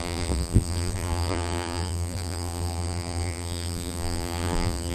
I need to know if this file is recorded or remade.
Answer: remade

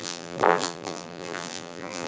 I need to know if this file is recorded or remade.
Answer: remade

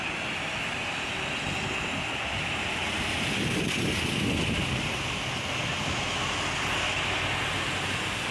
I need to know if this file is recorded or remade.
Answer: recorded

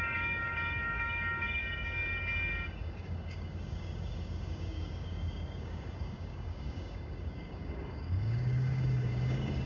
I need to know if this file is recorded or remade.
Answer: remade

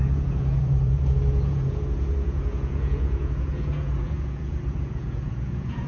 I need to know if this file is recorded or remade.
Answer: remade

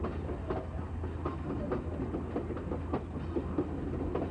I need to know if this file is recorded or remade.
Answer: recorded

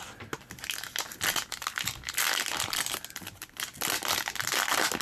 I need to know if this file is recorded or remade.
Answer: recorded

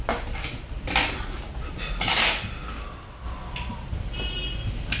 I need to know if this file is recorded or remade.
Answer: recorded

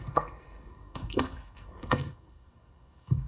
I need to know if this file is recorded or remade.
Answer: remade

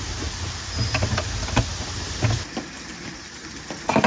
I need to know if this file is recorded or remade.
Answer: recorded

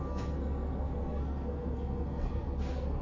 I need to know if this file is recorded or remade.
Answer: remade